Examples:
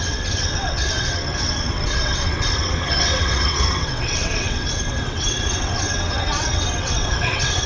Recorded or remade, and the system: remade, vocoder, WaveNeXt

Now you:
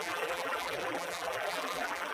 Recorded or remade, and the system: remade, vocoder, BigVGAN v2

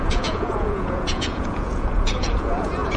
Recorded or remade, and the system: remade, vocoder, Vocos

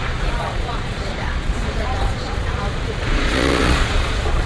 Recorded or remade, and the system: remade, vocoder, Vocos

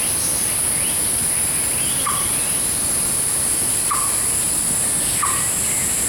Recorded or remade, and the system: recorded